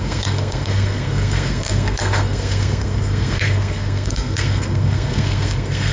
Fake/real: fake